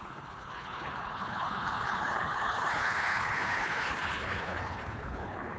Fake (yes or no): yes